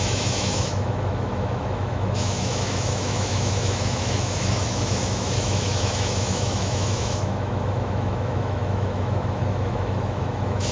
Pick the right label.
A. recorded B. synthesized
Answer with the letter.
B